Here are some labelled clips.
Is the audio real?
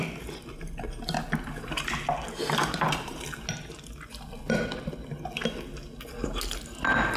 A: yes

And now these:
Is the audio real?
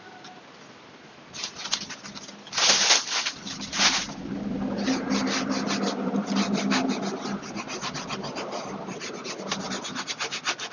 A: yes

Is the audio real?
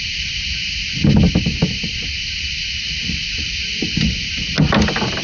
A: yes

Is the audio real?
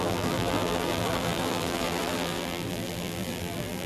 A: no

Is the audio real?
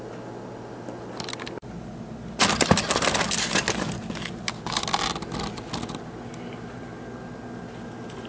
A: yes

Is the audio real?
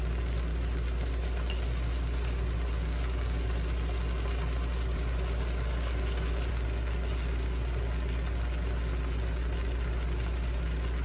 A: yes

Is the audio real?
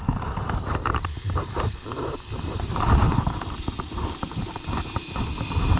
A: no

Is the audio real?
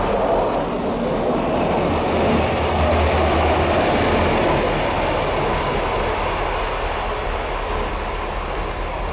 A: yes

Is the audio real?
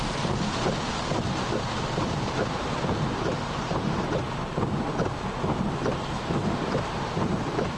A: no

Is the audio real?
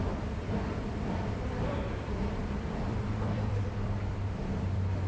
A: no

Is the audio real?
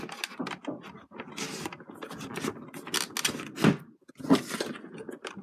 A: yes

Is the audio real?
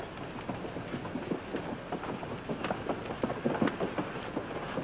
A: yes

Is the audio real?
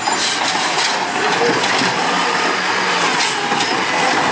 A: yes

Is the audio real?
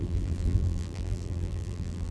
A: no